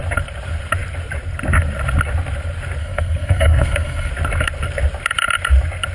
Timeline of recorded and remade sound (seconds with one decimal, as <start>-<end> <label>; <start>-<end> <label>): 0.0-2.8 recorded; 2.8-4.1 remade; 4.1-5.9 recorded